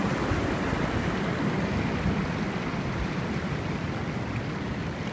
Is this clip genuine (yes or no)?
yes